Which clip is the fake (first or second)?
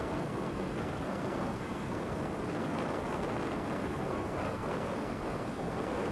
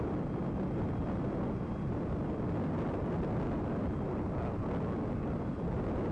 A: first